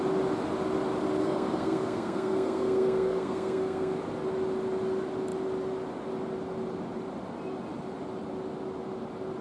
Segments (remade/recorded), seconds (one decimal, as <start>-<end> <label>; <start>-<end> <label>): 0.0-1.2 recorded; 1.2-4.0 remade; 4.0-9.4 recorded